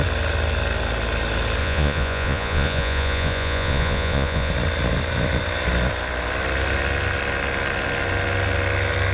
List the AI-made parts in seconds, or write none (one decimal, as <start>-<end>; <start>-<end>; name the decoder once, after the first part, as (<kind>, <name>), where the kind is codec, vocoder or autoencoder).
1.6-4.5 (vocoder, Vocos)